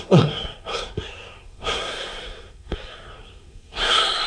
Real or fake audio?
fake